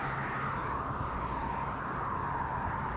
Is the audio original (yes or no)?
yes